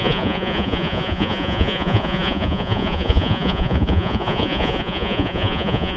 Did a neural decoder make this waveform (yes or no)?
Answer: yes